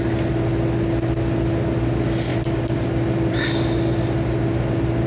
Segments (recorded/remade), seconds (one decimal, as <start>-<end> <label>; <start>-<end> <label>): 0.0-5.1 recorded

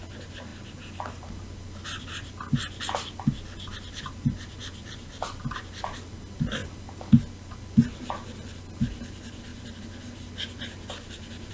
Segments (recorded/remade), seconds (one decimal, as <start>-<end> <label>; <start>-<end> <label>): 0.0-11.5 recorded